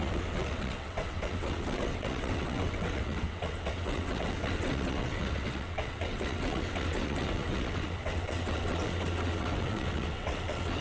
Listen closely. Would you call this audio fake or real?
fake